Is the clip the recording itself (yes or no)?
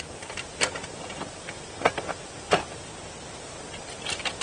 yes